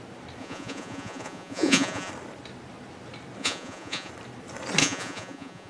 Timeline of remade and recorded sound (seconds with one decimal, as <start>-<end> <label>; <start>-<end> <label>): 0.0-0.4 recorded; 0.4-2.1 remade; 2.1-3.4 recorded; 3.4-4.1 remade; 4.1-4.8 recorded; 4.8-5.7 remade